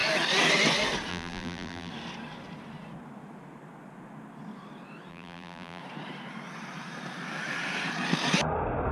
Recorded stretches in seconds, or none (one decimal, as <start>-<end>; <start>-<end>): 0.0-1.1; 1.9-5.1; 5.8-8.9